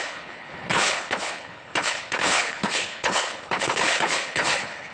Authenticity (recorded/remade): remade